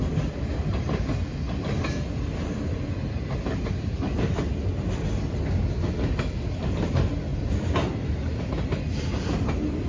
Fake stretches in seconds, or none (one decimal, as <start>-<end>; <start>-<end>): 3.0-4.0; 7.3-8.4